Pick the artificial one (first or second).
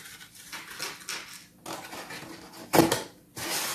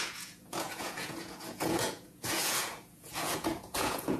second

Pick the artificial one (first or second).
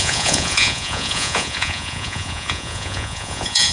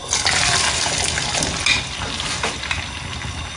first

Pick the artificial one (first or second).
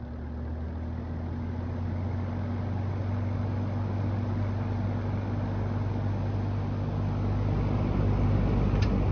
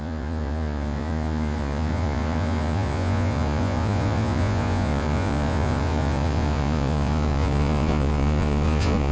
second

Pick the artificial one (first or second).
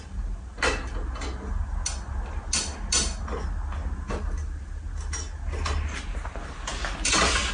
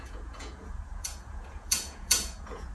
second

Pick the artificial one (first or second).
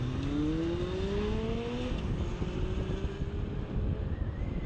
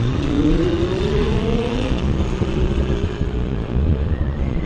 second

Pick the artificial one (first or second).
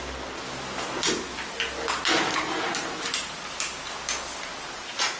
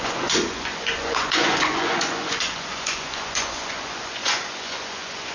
second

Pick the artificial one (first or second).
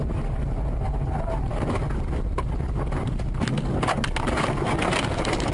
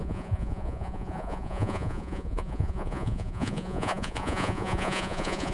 second